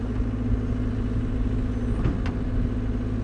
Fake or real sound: real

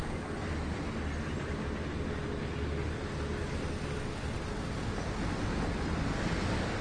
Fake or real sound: real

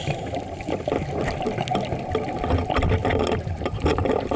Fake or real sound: real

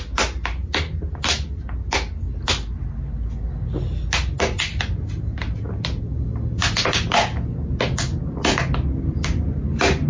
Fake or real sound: real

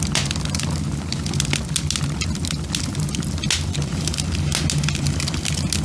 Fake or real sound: real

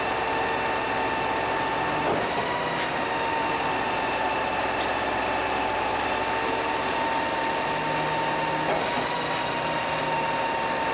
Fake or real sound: real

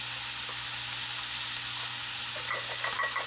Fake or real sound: real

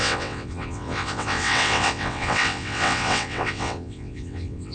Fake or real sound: fake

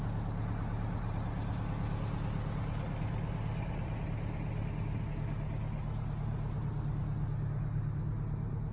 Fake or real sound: real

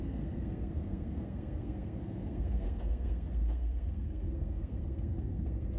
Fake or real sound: fake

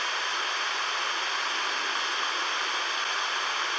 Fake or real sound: real